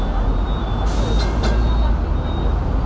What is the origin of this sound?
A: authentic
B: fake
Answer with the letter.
A